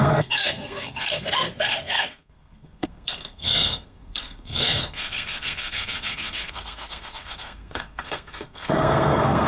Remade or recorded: remade